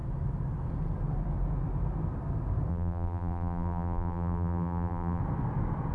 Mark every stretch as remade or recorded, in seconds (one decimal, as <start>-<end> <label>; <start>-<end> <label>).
0.0-2.7 recorded; 2.7-5.2 remade; 5.2-5.9 recorded